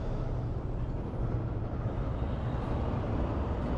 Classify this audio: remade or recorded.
remade